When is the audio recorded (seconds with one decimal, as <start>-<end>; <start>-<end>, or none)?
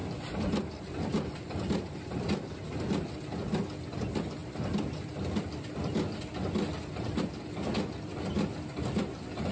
0.0-9.5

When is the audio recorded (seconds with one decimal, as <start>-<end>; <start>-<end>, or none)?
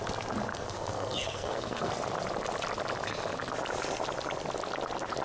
0.0-0.5; 1.9-5.2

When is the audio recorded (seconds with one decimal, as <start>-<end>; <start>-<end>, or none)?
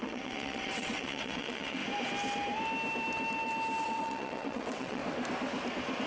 1.8-3.8; 5.0-6.1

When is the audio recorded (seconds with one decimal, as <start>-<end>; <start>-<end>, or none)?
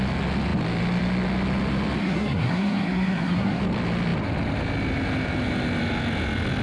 0.0-2.0; 3.6-6.6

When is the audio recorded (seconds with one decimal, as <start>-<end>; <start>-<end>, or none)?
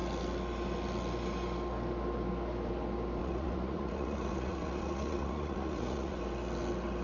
0.0-3.2; 6.2-7.0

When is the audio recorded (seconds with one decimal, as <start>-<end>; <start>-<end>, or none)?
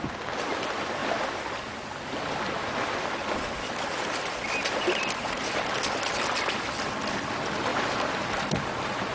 0.0-9.1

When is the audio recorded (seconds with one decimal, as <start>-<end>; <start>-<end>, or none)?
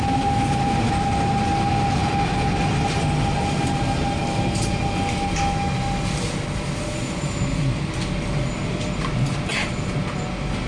0.0-10.7